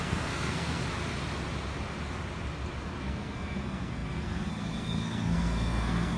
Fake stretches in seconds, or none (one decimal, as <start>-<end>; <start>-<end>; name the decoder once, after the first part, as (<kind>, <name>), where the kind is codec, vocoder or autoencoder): 0.0-0.8 (codec, SNAC); 3.0-6.2

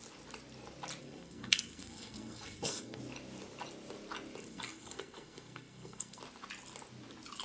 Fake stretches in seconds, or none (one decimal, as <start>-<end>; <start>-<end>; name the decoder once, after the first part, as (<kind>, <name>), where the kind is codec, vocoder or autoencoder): 1.0-3.0 (codec, SNAC); 4.4-6.2

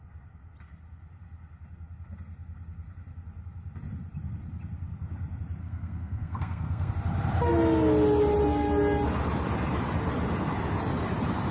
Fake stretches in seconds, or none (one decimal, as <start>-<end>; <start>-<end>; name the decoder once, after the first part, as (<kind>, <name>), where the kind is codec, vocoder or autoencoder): 5.6-6.9 (codec, SNAC)

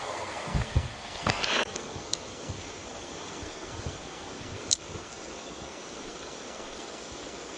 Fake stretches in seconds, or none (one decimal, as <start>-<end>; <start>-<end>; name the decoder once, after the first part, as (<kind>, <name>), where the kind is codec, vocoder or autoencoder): 0.0-7.6 (codec, SNAC)

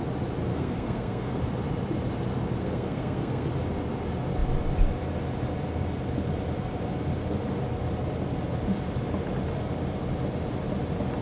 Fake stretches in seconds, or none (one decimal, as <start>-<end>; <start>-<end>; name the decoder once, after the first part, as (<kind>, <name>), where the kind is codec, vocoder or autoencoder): 0.5-1.4 (codec, SNAC); 2.6-3.5

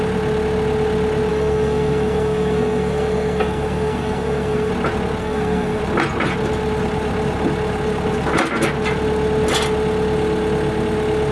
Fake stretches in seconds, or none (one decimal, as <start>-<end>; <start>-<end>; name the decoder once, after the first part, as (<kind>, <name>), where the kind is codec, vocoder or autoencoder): 1.3-4.7 (codec, SNAC); 5.2-5.8